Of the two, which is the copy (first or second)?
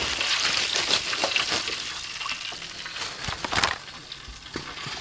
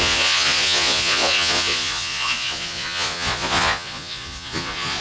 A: second